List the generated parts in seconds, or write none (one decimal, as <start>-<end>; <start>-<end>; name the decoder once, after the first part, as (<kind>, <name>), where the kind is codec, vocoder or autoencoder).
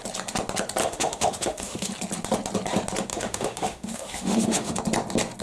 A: 0.8-1.9 (autoencoder, DAC-VAE); 3.1-4.8